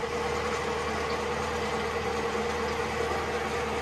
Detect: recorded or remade recorded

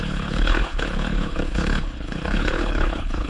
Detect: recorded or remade remade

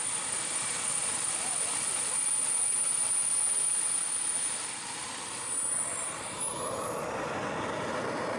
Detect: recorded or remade remade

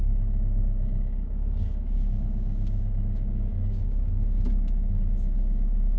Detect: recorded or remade remade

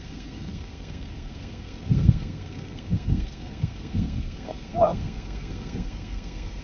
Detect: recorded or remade remade